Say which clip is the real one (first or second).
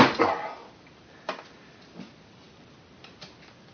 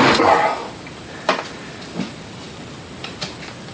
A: first